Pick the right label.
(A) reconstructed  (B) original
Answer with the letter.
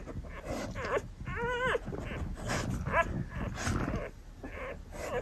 B